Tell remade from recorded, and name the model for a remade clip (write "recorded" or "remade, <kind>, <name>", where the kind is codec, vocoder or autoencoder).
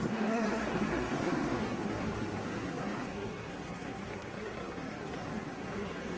remade, codec, SNAC